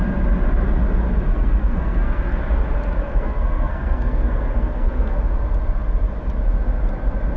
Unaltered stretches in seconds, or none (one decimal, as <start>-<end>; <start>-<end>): 0.0-1.3; 2.2-3.1; 5.2-7.4